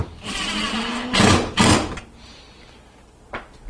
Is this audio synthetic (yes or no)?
no